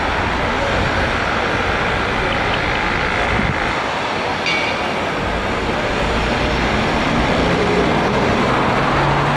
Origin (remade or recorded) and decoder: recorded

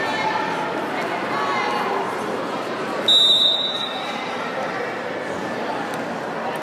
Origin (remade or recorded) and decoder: recorded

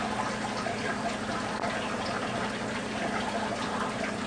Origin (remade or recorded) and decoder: recorded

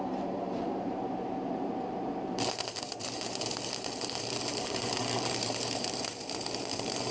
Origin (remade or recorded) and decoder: remade, vocoder, BigVGAN v2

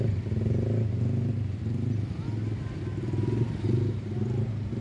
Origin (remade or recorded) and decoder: recorded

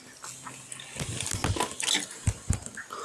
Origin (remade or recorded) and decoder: recorded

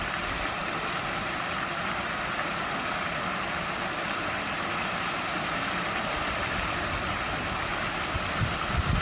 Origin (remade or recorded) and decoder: remade, vocoder, BigVGAN v2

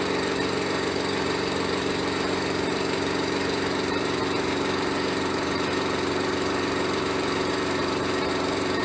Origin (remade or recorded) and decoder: remade, vocoder, BigVGAN v2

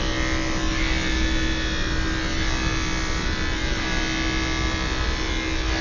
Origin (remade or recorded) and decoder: recorded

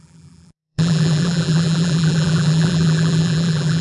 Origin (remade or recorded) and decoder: remade, vocoder, BigVGAN v2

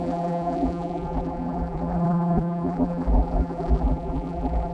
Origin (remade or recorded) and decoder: remade, vocoder, BigVGAN v2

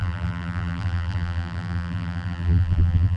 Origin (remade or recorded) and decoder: remade, vocoder, BigVGAN v2